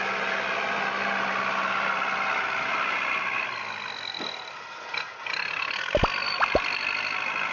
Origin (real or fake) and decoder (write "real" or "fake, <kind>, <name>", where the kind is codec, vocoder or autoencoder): real